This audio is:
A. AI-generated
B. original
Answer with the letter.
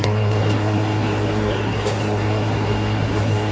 A